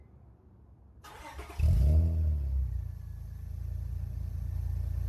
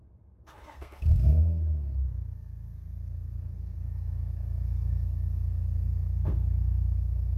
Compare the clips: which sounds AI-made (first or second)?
second